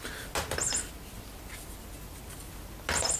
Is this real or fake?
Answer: real